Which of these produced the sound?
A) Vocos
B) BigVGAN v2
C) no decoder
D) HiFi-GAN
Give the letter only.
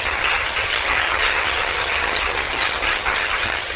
D